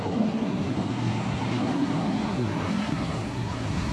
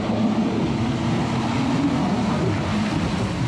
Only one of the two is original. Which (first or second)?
second